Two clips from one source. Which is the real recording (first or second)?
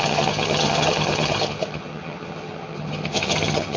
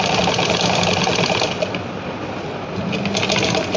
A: second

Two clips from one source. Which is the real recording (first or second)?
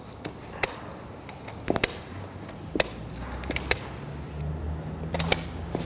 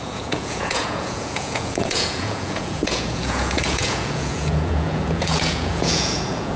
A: first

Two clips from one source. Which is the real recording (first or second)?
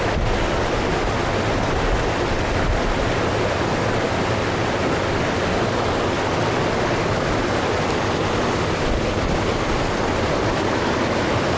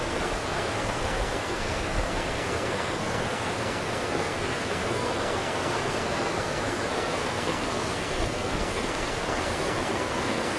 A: first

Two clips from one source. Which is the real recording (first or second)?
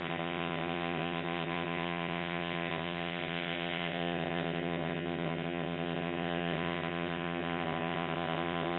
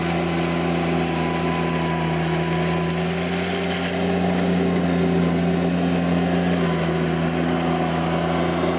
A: second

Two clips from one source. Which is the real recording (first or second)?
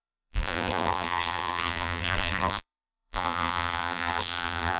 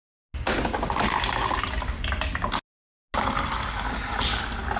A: second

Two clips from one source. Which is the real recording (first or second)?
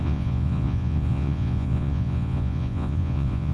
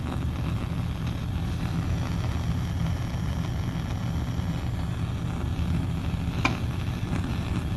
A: second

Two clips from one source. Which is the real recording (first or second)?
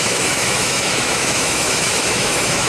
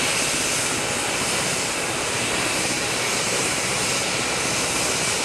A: second